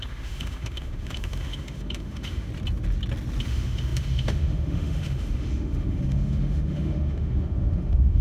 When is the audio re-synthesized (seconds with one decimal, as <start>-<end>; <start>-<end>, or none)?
0.0-2.5; 3.4-8.2